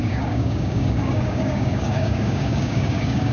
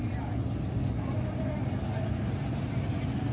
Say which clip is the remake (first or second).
first